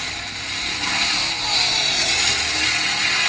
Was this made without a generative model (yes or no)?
yes